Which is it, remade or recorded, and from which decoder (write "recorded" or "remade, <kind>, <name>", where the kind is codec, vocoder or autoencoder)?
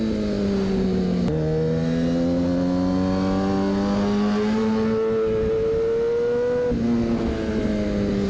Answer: recorded